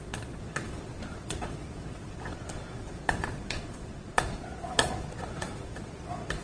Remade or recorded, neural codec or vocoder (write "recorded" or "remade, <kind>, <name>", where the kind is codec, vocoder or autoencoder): remade, vocoder, Vocos